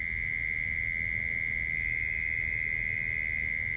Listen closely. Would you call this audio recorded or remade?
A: recorded